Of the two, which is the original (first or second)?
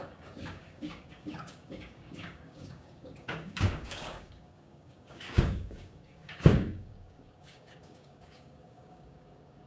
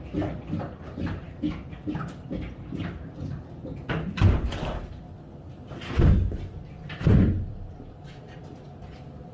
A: second